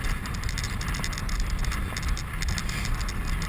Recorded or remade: recorded